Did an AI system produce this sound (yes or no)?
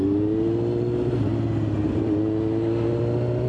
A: no